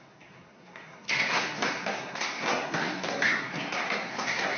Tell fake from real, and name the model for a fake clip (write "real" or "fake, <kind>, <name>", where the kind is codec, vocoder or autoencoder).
fake, codec, SNAC